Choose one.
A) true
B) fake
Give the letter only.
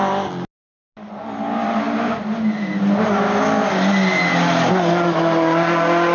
A